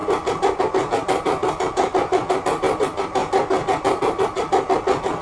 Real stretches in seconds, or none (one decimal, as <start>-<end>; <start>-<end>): 0.0-5.2